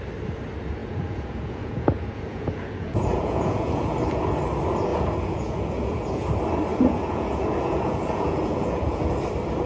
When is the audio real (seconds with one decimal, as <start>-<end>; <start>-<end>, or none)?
0.0-0.8; 3.9-4.9; 6.3-6.7; 9.2-9.7

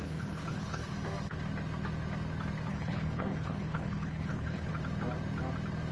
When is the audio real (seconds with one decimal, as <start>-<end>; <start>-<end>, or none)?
0.9-2.7; 4.7-5.9

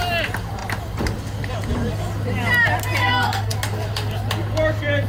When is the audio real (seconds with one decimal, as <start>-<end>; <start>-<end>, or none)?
0.0-3.0; 3.5-5.1

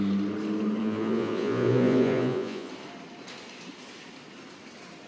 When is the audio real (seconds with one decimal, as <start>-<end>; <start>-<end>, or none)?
0.0-0.8; 2.7-5.1

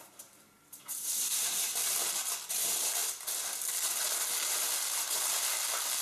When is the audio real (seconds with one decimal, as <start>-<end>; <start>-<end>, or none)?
1.7-6.0

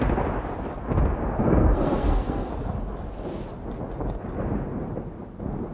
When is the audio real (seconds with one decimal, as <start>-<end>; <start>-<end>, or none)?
0.0-1.4; 2.5-5.7